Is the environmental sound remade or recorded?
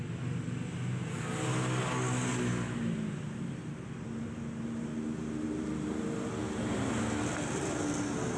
recorded